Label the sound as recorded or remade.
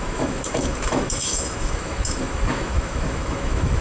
remade